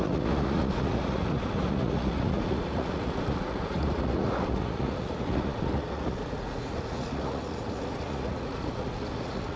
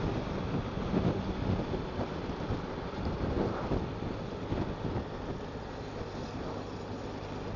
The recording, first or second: second